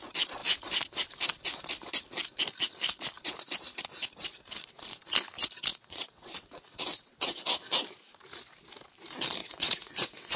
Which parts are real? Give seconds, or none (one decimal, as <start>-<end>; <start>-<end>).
0.0-5.7; 7.6-9.4